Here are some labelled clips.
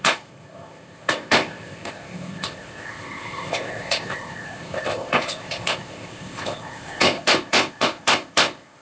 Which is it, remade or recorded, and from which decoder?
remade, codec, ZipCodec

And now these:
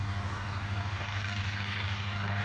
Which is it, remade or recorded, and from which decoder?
remade, codec, DAC